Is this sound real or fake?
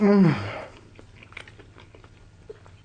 real